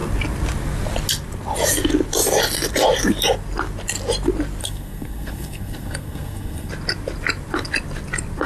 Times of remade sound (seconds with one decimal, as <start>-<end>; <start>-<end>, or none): 4.6-6.7